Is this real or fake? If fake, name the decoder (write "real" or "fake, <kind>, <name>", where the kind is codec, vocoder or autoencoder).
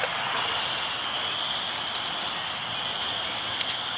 real